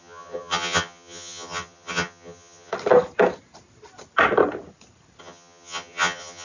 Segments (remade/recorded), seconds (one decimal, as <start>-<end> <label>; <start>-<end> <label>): 0.0-2.7 remade; 2.7-5.2 recorded; 5.2-6.4 remade